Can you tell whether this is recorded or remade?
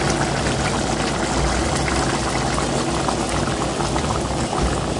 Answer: recorded